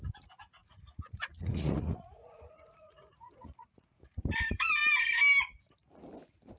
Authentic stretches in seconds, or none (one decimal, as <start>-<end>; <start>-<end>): 0.0-0.6; 4.2-6.6